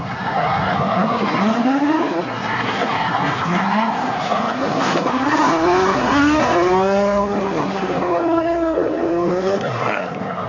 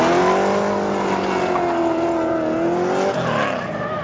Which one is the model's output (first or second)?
first